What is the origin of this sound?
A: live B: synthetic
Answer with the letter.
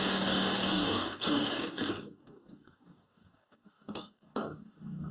B